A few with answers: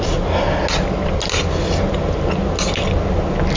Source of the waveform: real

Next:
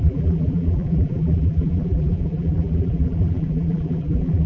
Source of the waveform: fake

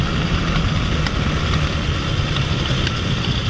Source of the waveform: real